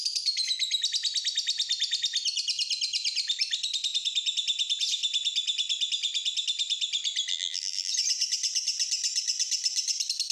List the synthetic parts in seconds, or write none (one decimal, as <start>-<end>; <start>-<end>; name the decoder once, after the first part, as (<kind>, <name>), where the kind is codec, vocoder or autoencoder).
7.3-7.9 (vocoder, BigVGAN v2)